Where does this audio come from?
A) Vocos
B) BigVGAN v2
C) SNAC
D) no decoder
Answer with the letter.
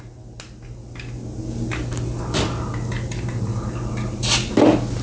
D